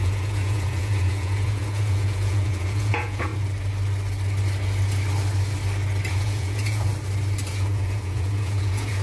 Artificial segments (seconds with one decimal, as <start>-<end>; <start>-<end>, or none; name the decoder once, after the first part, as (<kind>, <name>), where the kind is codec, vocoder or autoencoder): 0.0-3.3 (vocoder, Vocos); 6.1-6.9; 7.5-9.0